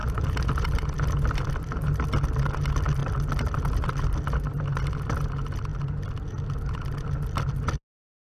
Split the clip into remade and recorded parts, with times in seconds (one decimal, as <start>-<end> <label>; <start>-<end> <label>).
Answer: 0.0-1.6 remade; 1.6-3.0 recorded; 3.0-4.2 remade; 4.2-8.3 recorded